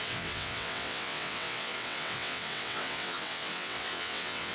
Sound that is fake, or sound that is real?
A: fake